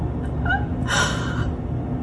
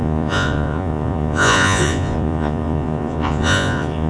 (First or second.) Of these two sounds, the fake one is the second